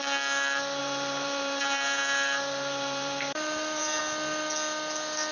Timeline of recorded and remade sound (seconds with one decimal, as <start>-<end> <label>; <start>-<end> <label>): 0.0-0.8 recorded; 0.8-4.0 remade; 4.0-5.3 recorded